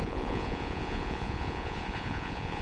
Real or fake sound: fake